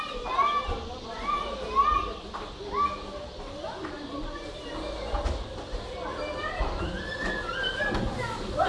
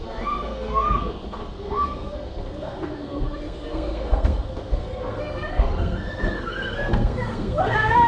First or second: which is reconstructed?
second